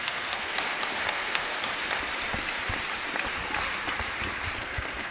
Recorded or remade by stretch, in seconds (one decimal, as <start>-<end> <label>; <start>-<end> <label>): 0.0-0.5 remade; 0.5-1.1 recorded; 1.1-1.5 remade; 1.5-4.6 recorded; 4.6-5.1 remade